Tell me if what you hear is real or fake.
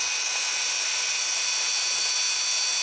real